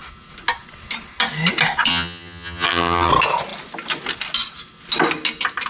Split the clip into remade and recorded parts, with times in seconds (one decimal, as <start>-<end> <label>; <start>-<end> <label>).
0.0-1.9 recorded; 1.9-3.1 remade; 3.1-5.7 recorded

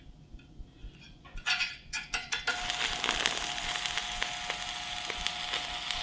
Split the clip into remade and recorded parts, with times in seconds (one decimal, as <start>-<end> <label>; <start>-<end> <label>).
0.0-0.8 recorded; 0.8-2.4 remade; 2.4-6.0 recorded